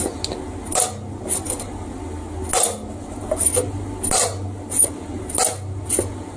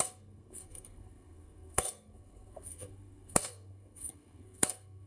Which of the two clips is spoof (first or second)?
second